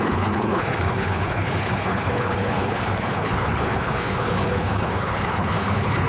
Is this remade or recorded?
remade